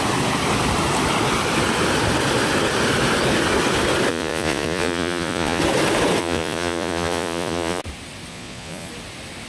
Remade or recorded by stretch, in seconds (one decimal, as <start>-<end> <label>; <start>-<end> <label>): 0.0-4.1 recorded; 4.1-5.6 remade; 5.6-6.2 recorded; 6.2-7.8 remade; 7.8-8.3 recorded; 8.3-8.9 remade; 8.9-9.5 recorded